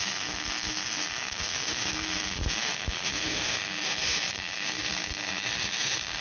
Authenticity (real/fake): fake